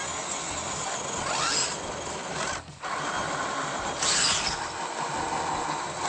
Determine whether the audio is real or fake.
real